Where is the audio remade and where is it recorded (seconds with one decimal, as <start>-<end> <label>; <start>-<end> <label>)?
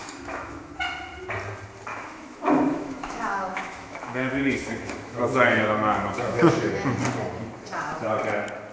0.0-0.7 remade; 0.7-1.9 recorded; 1.9-6.7 remade; 6.7-8.7 recorded